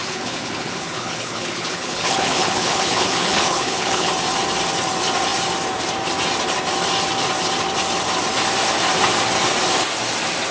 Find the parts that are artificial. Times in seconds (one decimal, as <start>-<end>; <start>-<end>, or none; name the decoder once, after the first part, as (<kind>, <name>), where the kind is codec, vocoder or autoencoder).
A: 0.0-4.1 (codec, HILCodec)